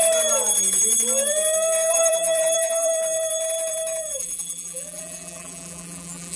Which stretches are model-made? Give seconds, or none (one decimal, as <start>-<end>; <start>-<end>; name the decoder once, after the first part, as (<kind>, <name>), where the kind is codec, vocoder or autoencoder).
1.9-2.9 (vocoder, BigVGAN v2); 4.1-6.4